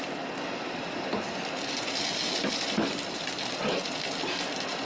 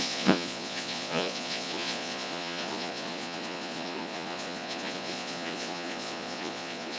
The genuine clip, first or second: first